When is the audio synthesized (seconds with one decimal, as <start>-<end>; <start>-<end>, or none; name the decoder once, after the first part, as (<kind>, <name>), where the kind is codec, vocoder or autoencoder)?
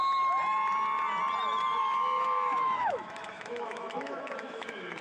1.8-5.0 (autoencoder, DAC-VAE)